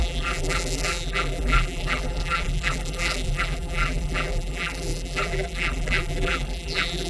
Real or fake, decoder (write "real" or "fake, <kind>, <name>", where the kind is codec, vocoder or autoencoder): fake, vocoder, BigVGAN v2